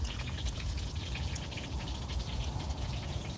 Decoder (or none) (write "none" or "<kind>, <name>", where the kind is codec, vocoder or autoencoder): vocoder, Vocos